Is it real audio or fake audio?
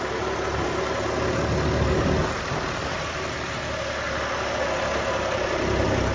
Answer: real